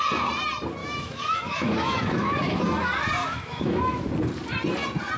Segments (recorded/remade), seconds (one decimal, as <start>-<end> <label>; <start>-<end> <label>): 0.0-0.8 recorded; 0.8-2.6 remade; 2.6-3.2 recorded; 3.2-4.1 remade; 4.1-5.2 recorded